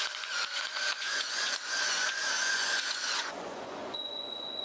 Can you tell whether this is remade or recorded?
remade